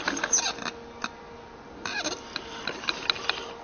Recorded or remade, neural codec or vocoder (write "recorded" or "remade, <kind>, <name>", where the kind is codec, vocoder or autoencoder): recorded